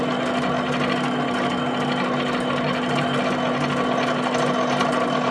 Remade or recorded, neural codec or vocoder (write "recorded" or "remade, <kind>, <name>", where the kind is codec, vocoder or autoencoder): recorded